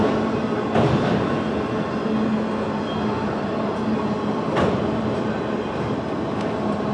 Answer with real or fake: real